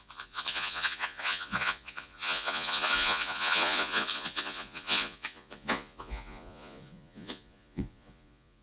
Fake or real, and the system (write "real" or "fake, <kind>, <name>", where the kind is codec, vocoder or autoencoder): fake, vocoder, Vocos